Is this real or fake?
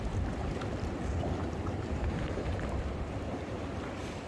fake